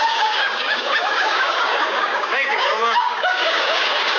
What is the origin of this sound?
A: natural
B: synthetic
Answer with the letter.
B